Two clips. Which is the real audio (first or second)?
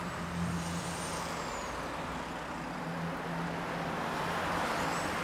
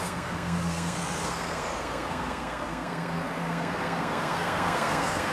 first